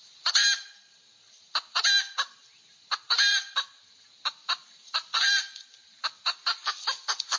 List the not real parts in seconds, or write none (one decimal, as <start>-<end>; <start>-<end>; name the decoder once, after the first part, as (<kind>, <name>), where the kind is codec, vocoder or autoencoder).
3.3-6.0 (vocoder, BigVGAN v2); 6.5-7.4